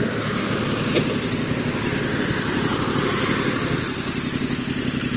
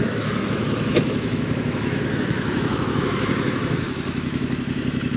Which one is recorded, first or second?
first